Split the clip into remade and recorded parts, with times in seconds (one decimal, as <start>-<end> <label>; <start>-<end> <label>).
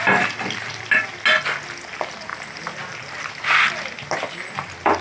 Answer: 0.0-5.0 recorded